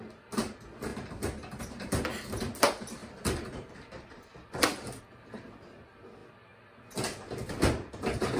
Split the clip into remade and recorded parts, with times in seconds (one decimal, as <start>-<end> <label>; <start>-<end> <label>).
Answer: 0.0-3.0 recorded; 3.0-5.0 remade; 5.0-8.4 recorded